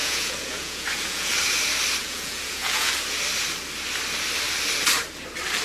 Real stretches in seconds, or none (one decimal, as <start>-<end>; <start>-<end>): 1.3-2.0; 2.9-5.6